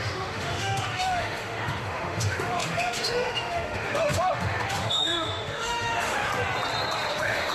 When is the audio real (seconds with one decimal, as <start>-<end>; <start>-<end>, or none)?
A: 6.3-7.1